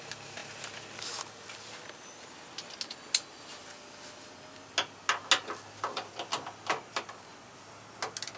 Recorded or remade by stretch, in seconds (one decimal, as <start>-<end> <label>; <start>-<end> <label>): 0.0-8.4 recorded

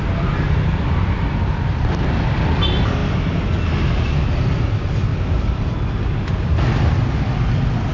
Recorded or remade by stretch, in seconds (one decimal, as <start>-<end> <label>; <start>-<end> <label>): 0.0-7.9 recorded

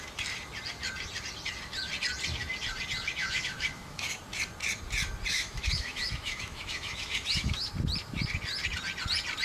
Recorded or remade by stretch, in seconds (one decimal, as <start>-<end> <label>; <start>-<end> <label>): 0.0-3.2 recorded; 3.2-4.2 remade; 4.2-5.3 recorded; 5.3-7.7 remade; 7.7-9.4 recorded

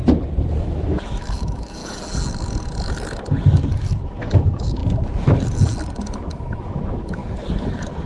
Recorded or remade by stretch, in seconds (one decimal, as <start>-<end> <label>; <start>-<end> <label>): 0.0-0.6 recorded; 0.6-1.8 remade; 1.8-4.0 recorded; 4.0-4.8 remade; 4.8-6.3 recorded; 6.3-7.2 remade; 7.2-8.1 recorded

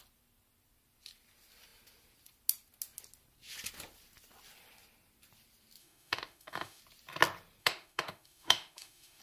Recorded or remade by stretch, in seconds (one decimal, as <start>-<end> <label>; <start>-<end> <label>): 0.0-5.8 recorded; 5.8-6.8 remade; 6.8-7.6 recorded; 7.6-9.2 remade